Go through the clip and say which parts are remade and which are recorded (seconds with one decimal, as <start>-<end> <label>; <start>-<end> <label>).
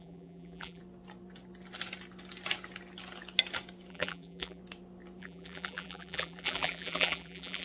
0.0-0.8 remade; 0.8-3.9 recorded; 3.9-4.6 remade; 4.6-5.2 recorded; 5.2-7.6 remade